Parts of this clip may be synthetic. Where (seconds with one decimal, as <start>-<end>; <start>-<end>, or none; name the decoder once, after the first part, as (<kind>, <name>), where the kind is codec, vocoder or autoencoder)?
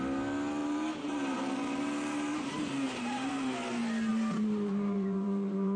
0.6-3.3 (vocoder, BigVGAN v2); 4.1-5.8